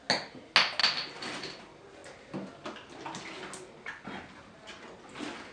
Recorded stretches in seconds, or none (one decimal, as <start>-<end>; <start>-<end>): 0.0-0.8; 1.6-5.5